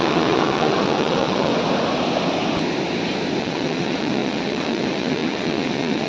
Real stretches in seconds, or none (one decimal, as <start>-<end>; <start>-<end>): 1.5-3.4